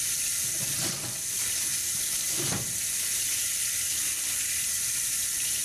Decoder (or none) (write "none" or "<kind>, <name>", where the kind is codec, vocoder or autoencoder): vocoder, BigVGAN v2